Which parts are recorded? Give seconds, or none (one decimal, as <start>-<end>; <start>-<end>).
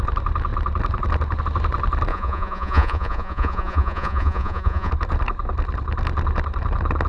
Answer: 0.0-2.1; 4.9-7.1